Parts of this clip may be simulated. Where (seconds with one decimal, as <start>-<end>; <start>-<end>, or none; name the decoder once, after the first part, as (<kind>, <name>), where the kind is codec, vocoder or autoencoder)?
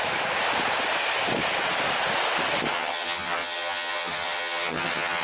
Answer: 2.7-5.2 (vocoder, HiFi-GAN)